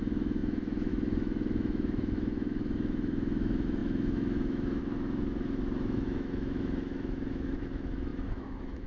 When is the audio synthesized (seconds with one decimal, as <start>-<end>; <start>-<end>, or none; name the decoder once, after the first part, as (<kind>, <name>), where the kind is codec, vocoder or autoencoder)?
0.0-8.9 (autoencoder, DAC-VAE)

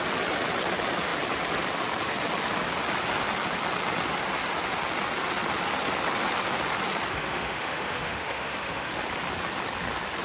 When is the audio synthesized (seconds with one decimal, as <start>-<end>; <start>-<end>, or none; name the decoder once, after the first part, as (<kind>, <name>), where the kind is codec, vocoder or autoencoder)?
7.1-8.9 (autoencoder, DAC-VAE)

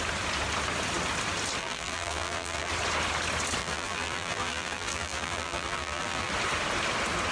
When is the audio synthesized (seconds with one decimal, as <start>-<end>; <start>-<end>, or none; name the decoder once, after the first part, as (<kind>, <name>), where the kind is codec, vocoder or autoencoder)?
1.6-2.7 (vocoder, BigVGAN v2); 3.6-6.3

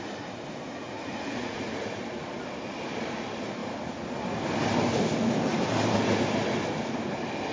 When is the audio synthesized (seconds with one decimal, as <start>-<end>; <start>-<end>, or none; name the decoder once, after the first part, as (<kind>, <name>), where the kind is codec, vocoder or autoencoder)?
0.7-2.0 (vocoder, Vocos)